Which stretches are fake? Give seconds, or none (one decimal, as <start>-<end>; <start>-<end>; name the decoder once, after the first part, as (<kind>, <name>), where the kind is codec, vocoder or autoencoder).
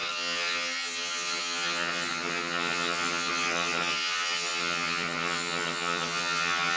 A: 0.0-6.8 (vocoder, HiFi-GAN)